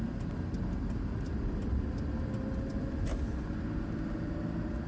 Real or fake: real